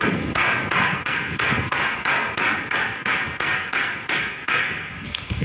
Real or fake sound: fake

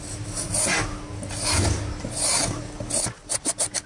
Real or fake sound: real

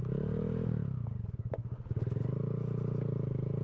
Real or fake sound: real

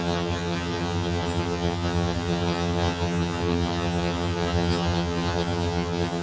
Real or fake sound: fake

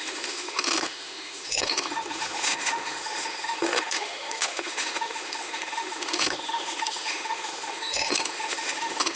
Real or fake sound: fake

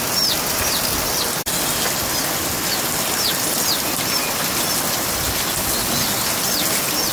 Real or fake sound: real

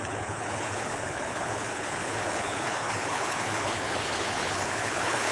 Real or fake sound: fake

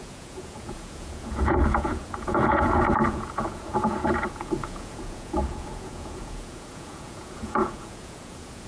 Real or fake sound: fake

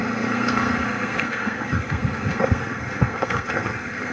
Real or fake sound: fake